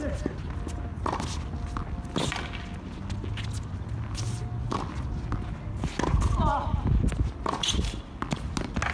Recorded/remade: recorded